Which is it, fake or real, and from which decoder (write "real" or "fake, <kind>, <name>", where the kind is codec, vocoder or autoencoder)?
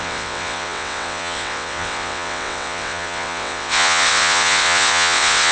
fake, vocoder, WaveNeXt